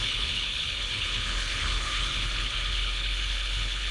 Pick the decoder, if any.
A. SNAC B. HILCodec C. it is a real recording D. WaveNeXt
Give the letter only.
B